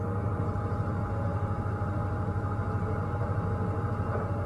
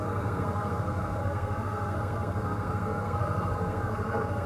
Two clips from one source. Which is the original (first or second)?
first